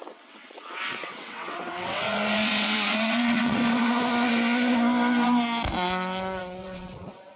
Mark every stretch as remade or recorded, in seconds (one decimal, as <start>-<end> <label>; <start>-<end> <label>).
0.0-3.6 remade; 3.6-6.4 recorded; 6.4-7.4 remade